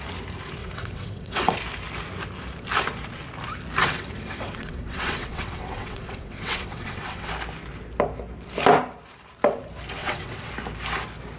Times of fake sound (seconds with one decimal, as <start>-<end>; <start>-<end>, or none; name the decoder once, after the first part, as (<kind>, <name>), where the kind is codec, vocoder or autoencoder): 0.6-1.6 (vocoder, WaveNeXt); 3.8-7.3; 10.0-10.5